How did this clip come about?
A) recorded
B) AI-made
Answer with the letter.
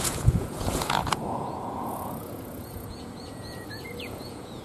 B